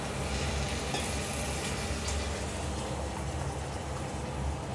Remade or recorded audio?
recorded